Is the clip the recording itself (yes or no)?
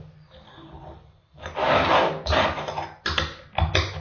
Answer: yes